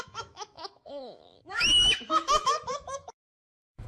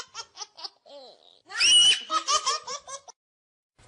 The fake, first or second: first